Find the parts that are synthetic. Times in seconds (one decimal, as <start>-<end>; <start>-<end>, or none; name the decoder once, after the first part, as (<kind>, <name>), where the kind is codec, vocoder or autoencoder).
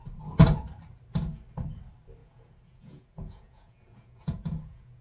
2.2-5.0 (vocoder, Vocos)